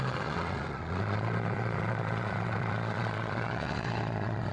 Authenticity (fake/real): fake